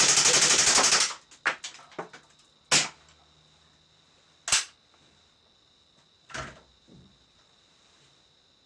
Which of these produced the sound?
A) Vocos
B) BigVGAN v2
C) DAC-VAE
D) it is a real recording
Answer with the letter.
D